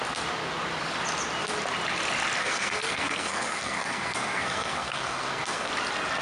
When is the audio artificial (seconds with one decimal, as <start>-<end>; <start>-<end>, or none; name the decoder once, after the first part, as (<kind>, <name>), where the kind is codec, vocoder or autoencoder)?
2.4-5.7 (codec, SNAC)

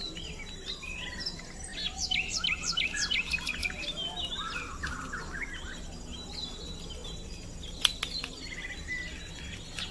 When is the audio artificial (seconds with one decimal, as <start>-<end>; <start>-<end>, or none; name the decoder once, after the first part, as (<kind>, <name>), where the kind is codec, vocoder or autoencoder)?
none